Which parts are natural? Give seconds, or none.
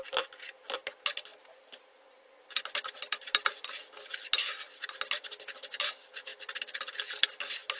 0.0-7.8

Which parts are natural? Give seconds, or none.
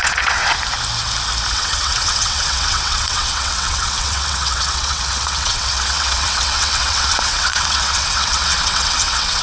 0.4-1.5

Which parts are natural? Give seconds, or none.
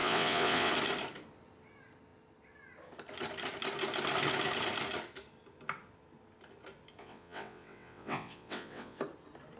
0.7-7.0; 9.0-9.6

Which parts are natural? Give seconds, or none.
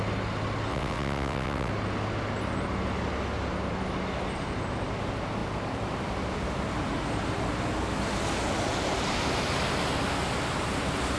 0.0-0.7; 1.7-11.2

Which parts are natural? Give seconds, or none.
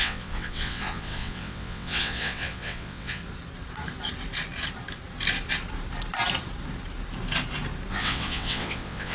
3.2-7.9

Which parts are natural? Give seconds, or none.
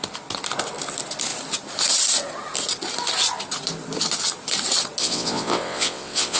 0.0-5.0